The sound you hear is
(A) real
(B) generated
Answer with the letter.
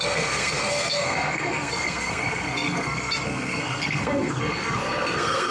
B